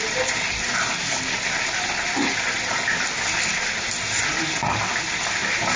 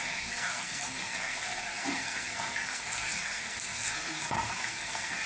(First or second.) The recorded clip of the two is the first